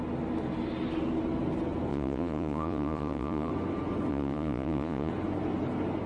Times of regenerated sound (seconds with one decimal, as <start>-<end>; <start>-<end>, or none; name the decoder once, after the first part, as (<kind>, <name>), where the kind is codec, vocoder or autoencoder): 1.9-3.5 (vocoder, Vocos); 4.1-5.1